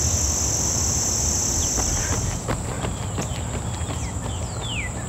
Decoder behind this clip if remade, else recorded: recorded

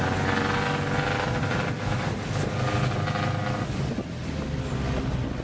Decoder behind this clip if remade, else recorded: recorded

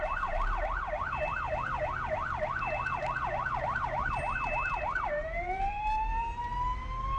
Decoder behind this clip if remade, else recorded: remade, vocoder, BigVGAN v2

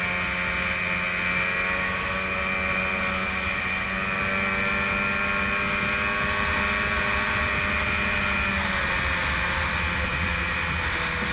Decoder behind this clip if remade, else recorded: recorded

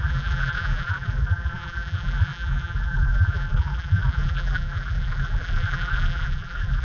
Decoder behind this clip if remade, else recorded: remade, vocoder, BigVGAN v2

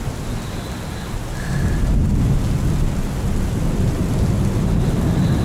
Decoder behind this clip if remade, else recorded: recorded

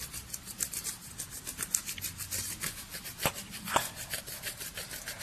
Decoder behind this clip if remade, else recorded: recorded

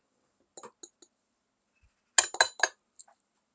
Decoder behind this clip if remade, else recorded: recorded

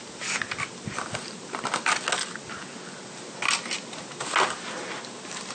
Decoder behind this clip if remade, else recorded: recorded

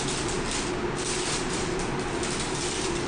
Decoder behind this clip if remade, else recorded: remade, vocoder, BigVGAN v2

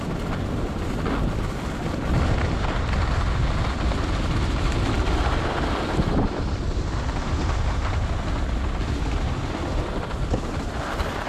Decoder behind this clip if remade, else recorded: recorded